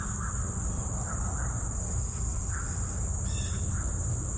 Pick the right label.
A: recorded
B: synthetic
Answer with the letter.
A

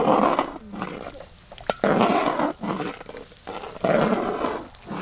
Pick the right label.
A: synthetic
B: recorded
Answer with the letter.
B